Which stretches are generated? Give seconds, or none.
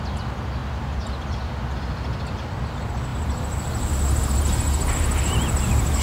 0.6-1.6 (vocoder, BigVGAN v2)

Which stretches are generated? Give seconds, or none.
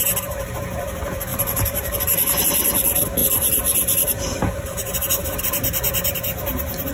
1.3-2.4 (vocoder, BigVGAN v2); 3.2-5.4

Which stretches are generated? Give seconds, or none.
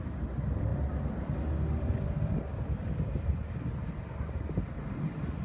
none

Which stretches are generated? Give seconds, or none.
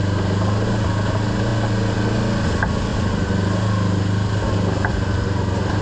none